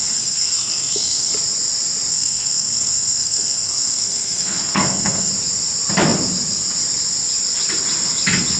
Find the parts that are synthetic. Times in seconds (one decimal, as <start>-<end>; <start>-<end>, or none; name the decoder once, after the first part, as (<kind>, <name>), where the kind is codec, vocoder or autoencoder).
0.0-1.3 (codec, SNAC); 2.1-5.3